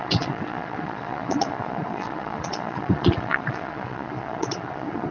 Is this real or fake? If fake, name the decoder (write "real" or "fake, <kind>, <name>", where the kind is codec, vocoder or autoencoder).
fake, vocoder, Vocos